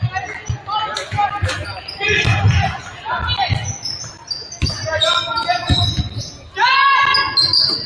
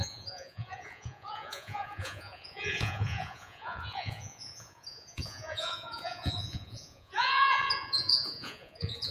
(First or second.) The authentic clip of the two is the first